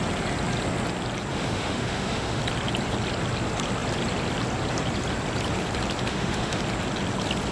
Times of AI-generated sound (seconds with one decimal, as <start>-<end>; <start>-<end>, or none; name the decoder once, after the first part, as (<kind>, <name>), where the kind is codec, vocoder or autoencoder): 1.3-2.4 (autoencoder, DAC-VAE); 6.1-6.6

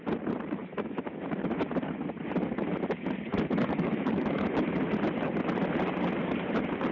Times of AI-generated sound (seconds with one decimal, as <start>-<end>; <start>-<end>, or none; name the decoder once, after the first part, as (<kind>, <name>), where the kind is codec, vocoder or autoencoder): 0.6-1.3 (autoencoder, DAC-VAE); 3.3-4.7

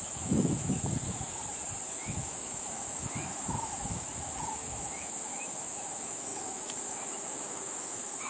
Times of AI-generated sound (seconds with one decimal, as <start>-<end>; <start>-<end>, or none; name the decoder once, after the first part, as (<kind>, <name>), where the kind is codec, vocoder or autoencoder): 0.0-1.4 (autoencoder, DAC-VAE); 1.9-8.3